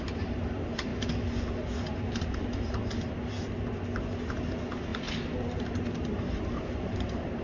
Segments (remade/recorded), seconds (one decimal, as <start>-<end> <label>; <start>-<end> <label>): 0.0-0.9 remade; 0.9-1.9 recorded; 1.9-2.8 remade; 2.8-4.0 recorded; 4.0-4.9 remade; 4.9-5.4 recorded; 5.4-7.4 remade